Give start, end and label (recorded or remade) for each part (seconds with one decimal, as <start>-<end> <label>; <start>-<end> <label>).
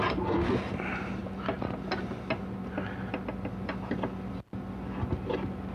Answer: 0.0-5.7 recorded